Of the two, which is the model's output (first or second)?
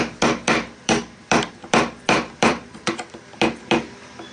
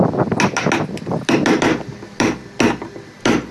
first